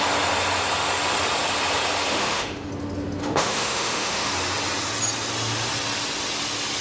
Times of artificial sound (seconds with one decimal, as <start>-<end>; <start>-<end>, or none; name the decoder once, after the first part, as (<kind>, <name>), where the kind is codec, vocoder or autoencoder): 2.1-2.7 (autoencoder, DAC-VAE); 3.2-4.3